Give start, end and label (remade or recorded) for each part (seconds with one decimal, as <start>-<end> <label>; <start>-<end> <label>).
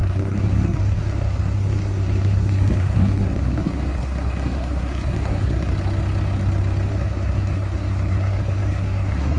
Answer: 0.0-5.7 remade; 5.7-6.9 recorded; 6.9-9.4 remade